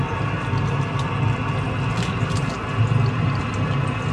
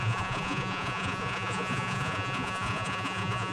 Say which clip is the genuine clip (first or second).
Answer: first